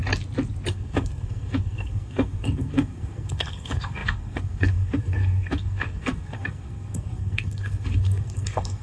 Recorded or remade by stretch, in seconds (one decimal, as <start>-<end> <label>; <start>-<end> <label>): 0.0-0.7 recorded; 0.7-8.8 remade